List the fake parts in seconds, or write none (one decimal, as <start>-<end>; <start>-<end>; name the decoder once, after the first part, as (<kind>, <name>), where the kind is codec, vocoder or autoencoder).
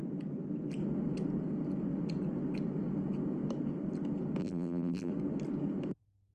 4.4-5.1 (vocoder, BigVGAN v2)